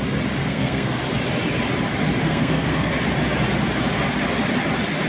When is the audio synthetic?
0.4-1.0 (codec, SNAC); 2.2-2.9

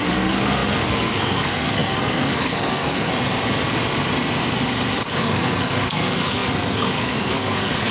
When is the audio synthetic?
0.0-3.1 (codec, SNAC); 5.2-7.9